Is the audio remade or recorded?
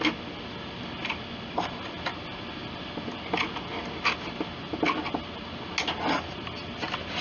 recorded